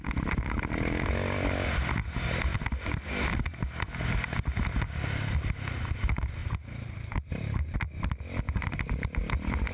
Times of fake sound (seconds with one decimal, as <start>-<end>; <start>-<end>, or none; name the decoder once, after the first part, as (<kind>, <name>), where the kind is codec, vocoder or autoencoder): 6.4-7.3 (vocoder, BigVGAN v2)